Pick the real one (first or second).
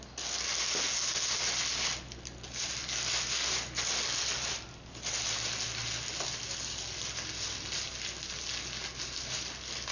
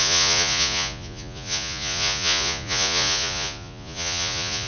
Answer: first